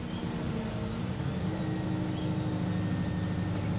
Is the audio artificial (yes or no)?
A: no